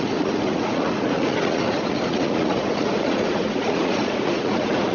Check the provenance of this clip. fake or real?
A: fake